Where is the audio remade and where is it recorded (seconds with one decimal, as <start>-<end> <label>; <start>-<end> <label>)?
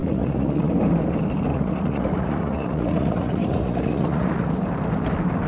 0.0-0.7 remade; 0.7-1.5 recorded; 1.5-4.5 remade; 4.5-5.5 recorded